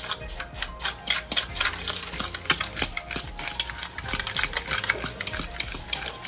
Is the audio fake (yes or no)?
no